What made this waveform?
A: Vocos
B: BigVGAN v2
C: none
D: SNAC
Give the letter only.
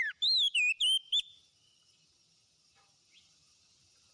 C